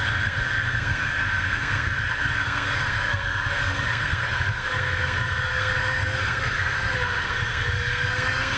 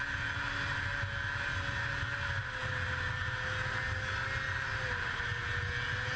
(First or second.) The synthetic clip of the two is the first